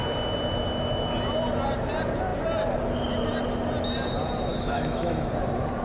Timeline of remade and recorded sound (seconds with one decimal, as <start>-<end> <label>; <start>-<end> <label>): 0.0-4.5 recorded; 4.5-5.3 remade; 5.3-5.8 recorded